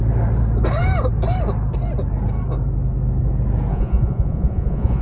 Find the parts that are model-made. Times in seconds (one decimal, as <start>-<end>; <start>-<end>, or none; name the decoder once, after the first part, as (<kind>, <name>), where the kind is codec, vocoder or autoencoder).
3.7-5.0 (vocoder, Vocos)